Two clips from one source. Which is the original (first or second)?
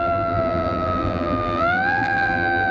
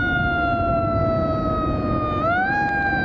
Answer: second